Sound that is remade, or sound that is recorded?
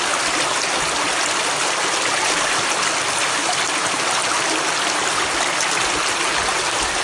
recorded